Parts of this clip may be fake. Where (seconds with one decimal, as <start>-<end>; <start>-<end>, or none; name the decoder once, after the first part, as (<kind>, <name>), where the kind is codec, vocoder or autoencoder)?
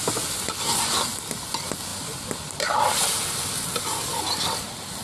1.9-4.2 (vocoder, BigVGAN v2)